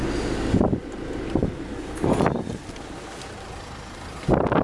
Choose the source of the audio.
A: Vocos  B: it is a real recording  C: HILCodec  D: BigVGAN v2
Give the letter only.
B